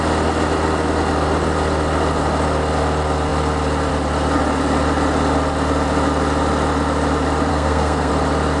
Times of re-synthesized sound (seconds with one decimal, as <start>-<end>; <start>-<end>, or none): 7.5-8.1